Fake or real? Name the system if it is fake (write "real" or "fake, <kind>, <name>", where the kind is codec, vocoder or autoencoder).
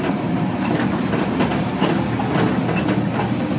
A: real